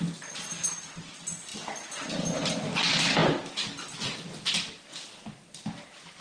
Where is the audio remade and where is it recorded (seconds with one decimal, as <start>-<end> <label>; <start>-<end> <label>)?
0.0-6.2 recorded